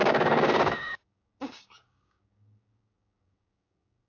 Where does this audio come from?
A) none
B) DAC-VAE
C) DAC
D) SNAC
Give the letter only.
C